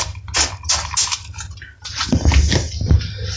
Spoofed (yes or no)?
no